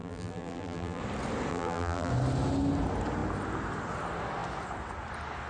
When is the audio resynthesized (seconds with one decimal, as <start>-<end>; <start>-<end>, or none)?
0.0-1.0; 1.5-2.1